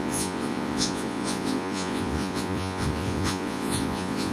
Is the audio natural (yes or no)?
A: no